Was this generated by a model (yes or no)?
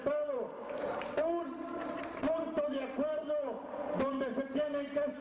yes